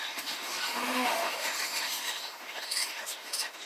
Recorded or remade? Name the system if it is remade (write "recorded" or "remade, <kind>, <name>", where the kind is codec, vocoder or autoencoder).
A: remade, autoencoder, DAC-VAE